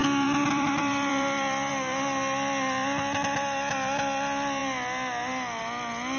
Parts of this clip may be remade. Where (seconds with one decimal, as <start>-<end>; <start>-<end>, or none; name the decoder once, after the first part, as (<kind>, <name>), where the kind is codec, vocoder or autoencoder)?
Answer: 0.0-1.7 (vocoder, BigVGAN v2)